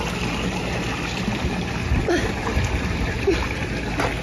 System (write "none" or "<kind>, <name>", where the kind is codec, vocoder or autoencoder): none